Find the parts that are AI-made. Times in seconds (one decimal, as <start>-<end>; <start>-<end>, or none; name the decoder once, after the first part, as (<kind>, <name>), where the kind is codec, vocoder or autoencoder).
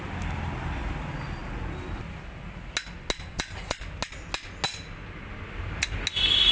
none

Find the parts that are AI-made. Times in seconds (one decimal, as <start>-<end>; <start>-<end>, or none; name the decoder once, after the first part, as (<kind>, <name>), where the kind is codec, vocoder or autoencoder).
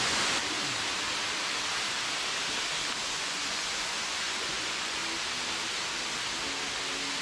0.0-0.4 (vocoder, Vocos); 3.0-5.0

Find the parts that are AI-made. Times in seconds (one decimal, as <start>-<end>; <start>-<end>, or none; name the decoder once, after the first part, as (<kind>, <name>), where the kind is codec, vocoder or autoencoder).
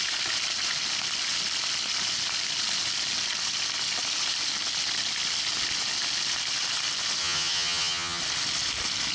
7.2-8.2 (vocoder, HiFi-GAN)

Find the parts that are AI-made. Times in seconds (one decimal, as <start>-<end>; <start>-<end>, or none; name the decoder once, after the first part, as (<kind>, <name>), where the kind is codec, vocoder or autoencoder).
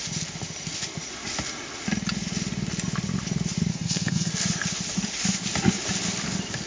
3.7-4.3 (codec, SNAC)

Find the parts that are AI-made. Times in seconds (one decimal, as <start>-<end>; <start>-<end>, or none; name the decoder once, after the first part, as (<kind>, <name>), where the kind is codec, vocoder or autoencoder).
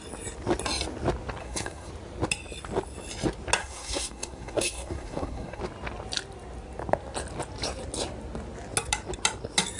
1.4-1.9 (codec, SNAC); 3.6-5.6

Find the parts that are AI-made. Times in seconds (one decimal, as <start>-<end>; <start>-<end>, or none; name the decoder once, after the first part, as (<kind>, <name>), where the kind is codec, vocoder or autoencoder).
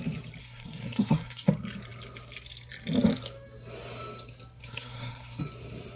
0.4-1.5 (codec, SNAC); 4.6-5.4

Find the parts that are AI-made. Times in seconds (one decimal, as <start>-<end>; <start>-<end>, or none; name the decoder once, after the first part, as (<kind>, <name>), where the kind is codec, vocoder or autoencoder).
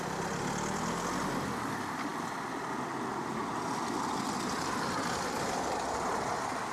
none